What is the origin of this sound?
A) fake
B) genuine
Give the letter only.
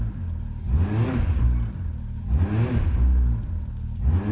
B